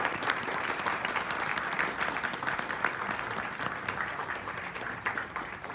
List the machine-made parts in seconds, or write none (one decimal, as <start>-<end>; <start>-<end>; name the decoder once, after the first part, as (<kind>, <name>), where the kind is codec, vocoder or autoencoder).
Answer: 0.0-1.5 (vocoder, BigVGAN v2); 4.5-5.7